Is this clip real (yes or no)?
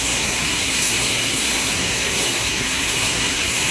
no